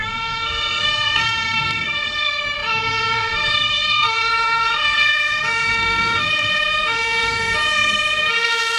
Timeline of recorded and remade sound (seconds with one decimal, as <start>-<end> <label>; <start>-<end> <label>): 0.0-8.8 remade